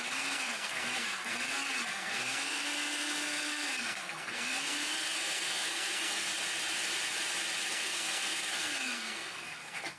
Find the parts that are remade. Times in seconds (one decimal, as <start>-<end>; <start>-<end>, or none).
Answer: 0.0-6.3; 7.7-10.0